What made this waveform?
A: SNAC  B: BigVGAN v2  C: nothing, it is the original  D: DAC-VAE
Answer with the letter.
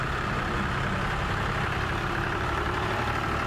B